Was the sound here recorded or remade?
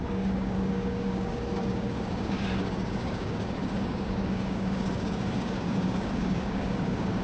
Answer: remade